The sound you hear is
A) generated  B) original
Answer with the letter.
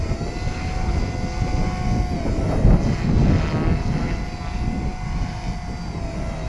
B